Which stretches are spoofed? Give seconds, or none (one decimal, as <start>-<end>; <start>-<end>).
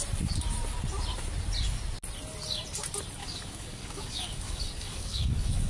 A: 3.2-5.7